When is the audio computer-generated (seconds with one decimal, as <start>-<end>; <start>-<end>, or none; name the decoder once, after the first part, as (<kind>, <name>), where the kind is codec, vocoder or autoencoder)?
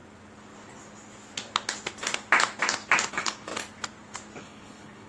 3.1-3.5 (codec, HILCodec); 4.4-5.1